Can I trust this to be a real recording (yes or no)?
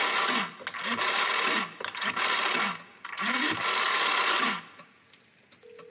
yes